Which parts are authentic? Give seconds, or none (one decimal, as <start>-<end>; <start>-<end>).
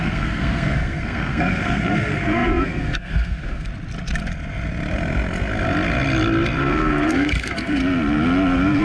3.7-6.6; 7.8-8.8